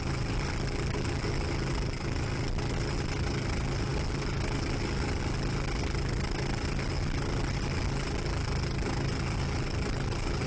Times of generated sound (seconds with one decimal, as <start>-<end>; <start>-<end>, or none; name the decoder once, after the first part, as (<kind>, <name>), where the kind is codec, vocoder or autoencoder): none